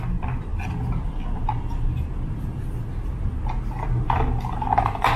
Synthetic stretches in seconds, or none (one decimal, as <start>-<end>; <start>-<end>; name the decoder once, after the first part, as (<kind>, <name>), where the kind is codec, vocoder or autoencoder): none